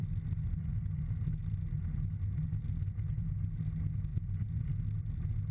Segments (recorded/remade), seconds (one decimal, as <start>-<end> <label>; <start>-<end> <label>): 0.0-5.5 recorded